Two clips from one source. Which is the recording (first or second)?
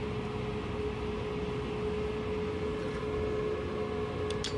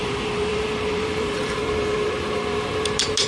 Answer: first